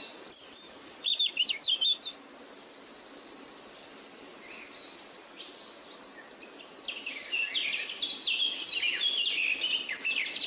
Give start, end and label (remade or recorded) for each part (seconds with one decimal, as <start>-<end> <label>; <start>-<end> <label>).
0.0-10.5 recorded